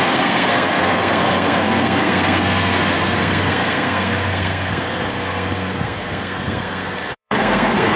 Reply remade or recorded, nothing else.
remade